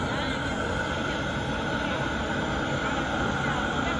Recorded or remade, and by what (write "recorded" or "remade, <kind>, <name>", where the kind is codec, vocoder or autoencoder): recorded